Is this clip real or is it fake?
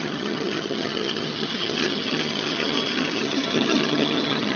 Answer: fake